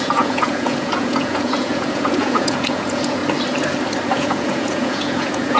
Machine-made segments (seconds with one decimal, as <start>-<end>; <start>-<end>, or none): 0.0-3.2; 4.1-5.6